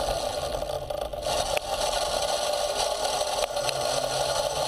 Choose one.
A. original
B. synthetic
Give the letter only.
A